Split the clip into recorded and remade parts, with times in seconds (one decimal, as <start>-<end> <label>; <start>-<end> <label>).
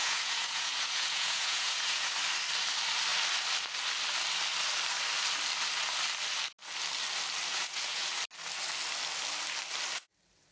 0.0-2.1 remade; 2.1-7.5 recorded; 7.5-8.1 remade; 8.1-10.5 recorded